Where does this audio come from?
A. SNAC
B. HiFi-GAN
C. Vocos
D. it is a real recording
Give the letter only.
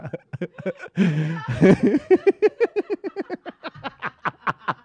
D